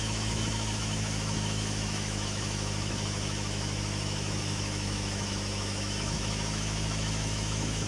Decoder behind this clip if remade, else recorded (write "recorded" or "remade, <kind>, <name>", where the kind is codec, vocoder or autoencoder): remade, autoencoder, DAC-VAE